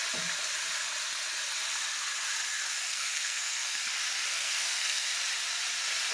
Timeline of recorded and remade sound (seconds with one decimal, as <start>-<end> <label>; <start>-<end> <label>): 0.0-2.9 recorded; 2.9-3.8 remade; 3.8-4.3 recorded; 4.3-5.1 remade; 5.1-6.1 recorded